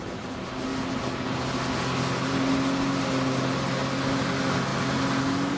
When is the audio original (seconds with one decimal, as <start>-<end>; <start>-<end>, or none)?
0.0-5.6